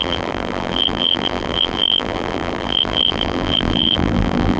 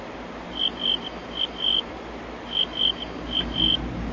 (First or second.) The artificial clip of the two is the first